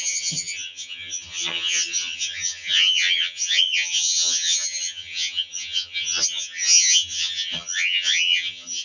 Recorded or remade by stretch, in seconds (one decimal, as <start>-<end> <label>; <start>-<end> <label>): 0.0-8.8 remade